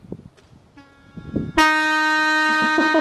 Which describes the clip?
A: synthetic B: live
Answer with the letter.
B